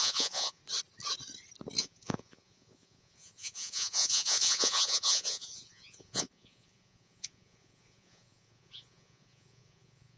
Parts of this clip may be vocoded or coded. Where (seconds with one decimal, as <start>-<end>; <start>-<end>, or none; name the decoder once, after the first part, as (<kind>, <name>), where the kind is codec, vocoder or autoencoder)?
0.0-0.6 (vocoder, Vocos); 1.8-10.2